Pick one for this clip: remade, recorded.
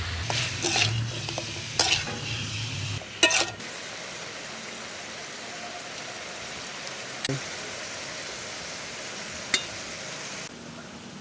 recorded